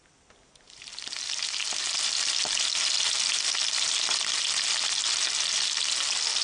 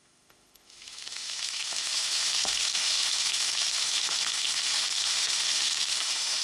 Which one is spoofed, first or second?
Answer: second